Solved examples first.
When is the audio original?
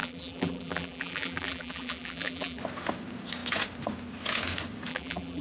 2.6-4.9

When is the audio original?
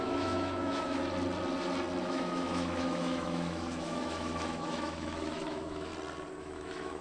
1.0-2.0; 5.9-6.4